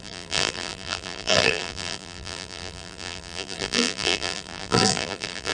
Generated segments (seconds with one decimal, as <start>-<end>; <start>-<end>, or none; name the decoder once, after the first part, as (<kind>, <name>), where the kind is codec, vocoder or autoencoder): 0.0-5.5 (vocoder, BigVGAN v2)